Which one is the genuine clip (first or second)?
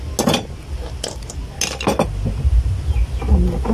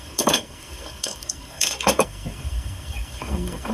first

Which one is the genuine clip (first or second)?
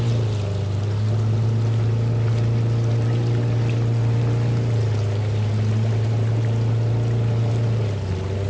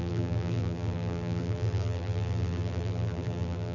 first